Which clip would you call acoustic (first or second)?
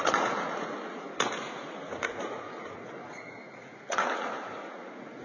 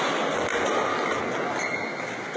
second